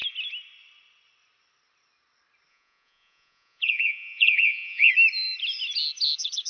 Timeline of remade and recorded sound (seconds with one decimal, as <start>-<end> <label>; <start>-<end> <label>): 0.0-2.5 recorded; 2.5-4.9 remade; 4.9-6.5 recorded